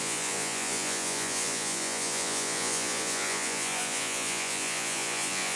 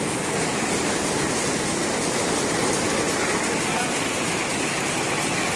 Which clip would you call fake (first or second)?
first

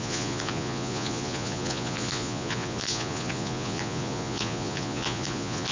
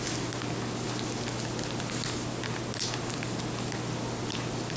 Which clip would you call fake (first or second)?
first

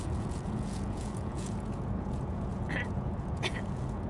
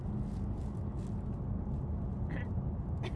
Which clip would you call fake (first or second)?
first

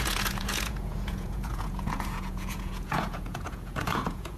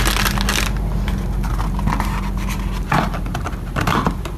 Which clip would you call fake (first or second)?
first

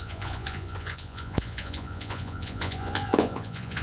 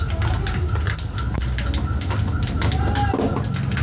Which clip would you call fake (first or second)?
first